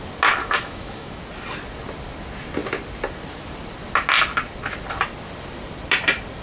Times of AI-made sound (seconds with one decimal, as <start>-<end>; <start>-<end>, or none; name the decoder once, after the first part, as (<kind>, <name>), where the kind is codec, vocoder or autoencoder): 0.4-1.2 (autoencoder, DAC-VAE)